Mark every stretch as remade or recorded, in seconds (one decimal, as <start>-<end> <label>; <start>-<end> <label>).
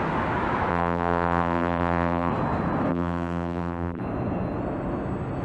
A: 0.0-0.7 recorded; 0.7-2.3 remade; 2.3-2.9 recorded; 2.9-4.0 remade; 4.0-5.4 recorded